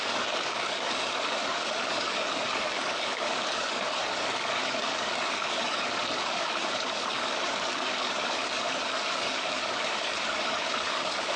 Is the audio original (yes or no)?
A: no